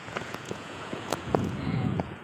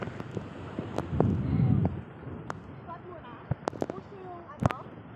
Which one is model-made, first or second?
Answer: first